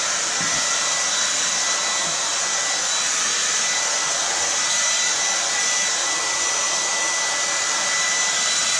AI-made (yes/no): no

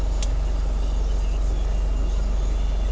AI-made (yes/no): no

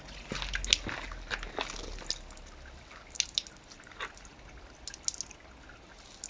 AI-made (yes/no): no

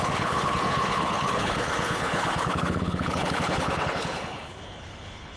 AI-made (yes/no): yes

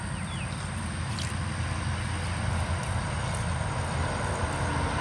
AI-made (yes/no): no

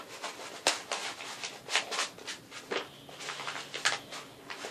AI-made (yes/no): no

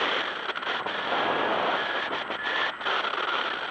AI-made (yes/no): yes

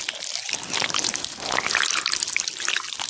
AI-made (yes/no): no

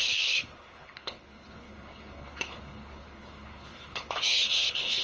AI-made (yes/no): yes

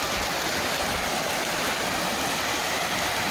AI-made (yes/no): no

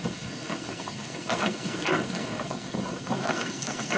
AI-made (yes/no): yes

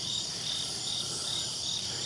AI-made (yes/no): yes